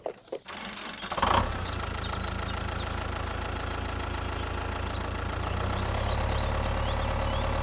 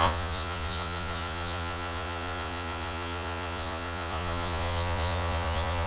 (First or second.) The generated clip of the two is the second